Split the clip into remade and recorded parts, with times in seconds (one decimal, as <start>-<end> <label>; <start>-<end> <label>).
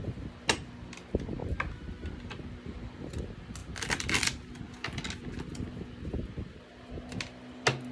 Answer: 0.0-7.9 recorded